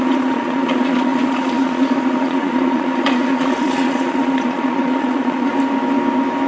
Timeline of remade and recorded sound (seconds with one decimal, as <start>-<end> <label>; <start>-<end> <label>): 0.0-5.5 remade; 5.5-6.5 recorded